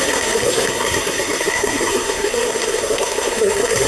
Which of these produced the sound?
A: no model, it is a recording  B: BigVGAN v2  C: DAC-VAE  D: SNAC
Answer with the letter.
D